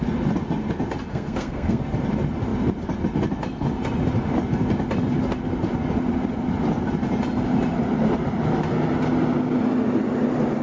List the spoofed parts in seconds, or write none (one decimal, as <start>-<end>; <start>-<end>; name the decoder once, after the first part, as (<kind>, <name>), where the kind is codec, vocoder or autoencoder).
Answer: 1.1-1.8 (codec, SNAC)